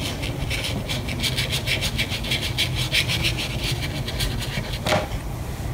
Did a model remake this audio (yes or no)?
no